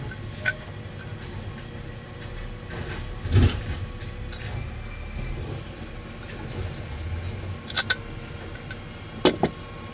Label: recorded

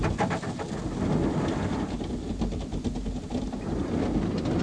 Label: recorded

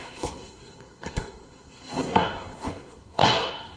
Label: remade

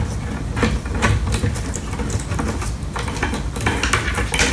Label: recorded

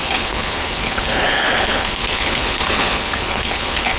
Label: remade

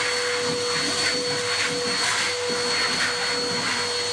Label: recorded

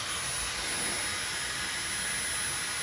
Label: recorded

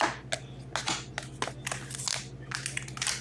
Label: recorded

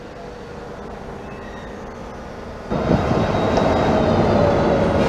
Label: recorded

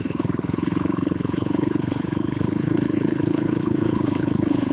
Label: remade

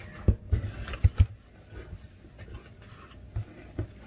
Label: recorded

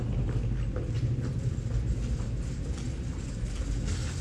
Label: recorded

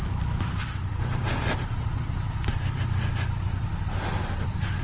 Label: recorded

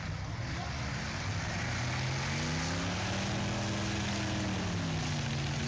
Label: recorded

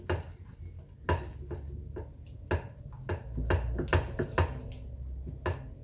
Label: recorded